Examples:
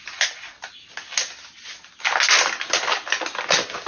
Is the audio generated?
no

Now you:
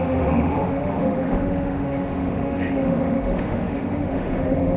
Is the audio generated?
yes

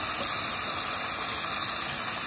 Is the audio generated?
no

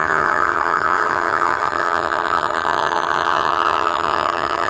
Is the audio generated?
yes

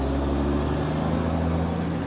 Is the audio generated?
no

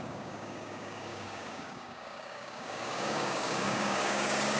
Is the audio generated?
yes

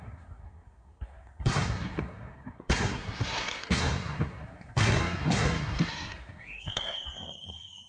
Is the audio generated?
yes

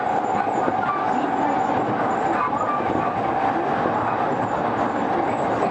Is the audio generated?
no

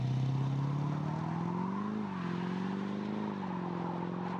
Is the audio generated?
no